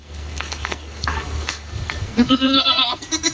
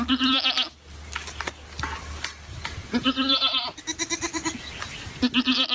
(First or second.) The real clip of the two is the second